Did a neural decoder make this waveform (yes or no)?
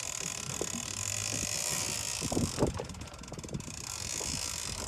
no